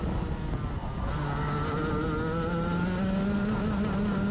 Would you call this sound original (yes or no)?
yes